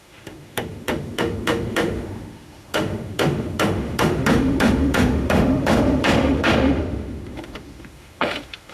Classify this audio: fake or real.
fake